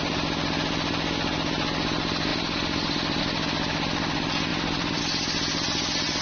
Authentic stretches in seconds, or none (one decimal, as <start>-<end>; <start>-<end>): 0.0-2.3; 3.2-4.5; 5.0-6.2